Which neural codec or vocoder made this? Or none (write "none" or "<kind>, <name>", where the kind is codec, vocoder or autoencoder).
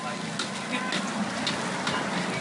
none